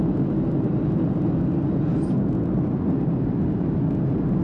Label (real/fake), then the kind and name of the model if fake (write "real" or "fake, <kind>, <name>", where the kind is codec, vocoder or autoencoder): real